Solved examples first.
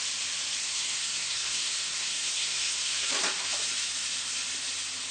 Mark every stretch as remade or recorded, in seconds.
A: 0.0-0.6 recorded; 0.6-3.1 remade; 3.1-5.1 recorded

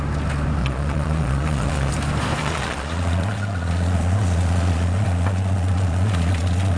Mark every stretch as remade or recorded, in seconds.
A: 0.0-0.6 recorded; 0.6-1.9 remade; 1.9-2.4 recorded; 2.4-6.8 remade

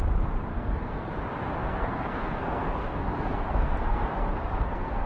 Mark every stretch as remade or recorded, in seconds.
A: 0.0-0.5 recorded; 0.5-1.1 remade; 1.1-1.6 recorded; 1.6-5.1 remade